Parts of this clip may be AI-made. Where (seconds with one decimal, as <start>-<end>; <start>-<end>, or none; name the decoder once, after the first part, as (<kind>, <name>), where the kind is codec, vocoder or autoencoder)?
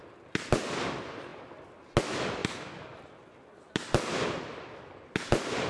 none